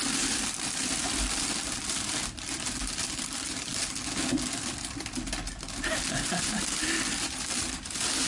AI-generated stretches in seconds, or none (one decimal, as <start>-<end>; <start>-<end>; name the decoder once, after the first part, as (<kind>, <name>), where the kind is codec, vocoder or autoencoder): 0.0-3.7 (vocoder, BigVGAN v2); 5.9-8.3